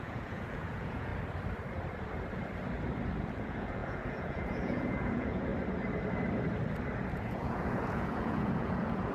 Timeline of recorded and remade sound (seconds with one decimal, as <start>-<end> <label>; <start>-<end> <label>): 0.0-1.1 remade; 1.1-3.2 recorded; 3.2-5.5 remade; 5.5-7.1 recorded; 7.1-9.1 remade